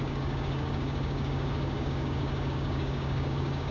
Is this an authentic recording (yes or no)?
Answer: no